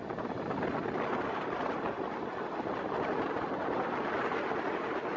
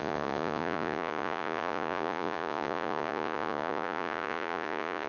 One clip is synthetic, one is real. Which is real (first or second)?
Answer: first